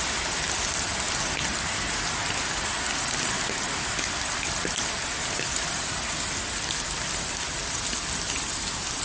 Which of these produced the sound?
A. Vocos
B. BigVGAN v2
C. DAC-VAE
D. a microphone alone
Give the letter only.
D